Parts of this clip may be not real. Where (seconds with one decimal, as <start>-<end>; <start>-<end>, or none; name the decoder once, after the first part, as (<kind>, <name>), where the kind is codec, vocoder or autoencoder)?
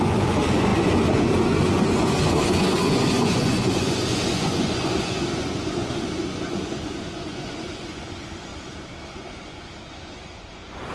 0.0-8.5 (vocoder, Vocos); 9.1-10.9